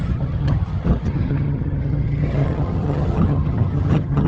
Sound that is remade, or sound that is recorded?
remade